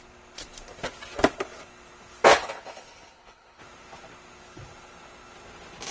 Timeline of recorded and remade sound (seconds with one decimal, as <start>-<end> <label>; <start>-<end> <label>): 0.0-2.3 recorded; 2.3-3.6 remade; 3.6-5.9 recorded